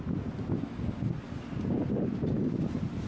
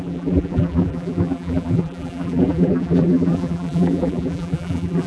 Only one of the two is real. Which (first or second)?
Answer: first